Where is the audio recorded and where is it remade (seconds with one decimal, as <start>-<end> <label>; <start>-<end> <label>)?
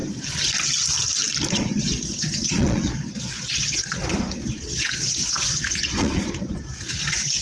0.0-1.5 recorded; 1.5-7.4 remade